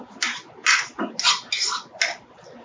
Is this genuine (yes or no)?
yes